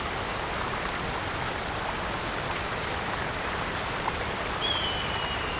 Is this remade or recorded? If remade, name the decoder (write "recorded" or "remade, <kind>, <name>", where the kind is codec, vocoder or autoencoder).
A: recorded